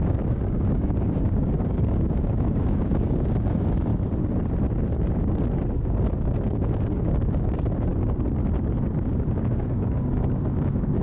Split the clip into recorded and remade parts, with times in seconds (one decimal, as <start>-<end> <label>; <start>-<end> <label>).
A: 0.0-3.9 remade; 3.9-6.2 recorded; 6.2-7.9 remade; 7.9-9.0 recorded; 9.0-11.0 remade